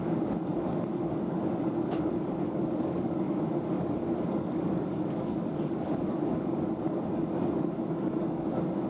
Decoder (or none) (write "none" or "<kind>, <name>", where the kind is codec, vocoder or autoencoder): codec, DAC